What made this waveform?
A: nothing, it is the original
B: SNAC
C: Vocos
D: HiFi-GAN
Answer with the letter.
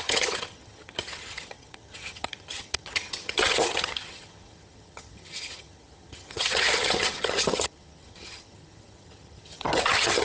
D